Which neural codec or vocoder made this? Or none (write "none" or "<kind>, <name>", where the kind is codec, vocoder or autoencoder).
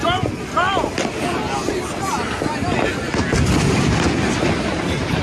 none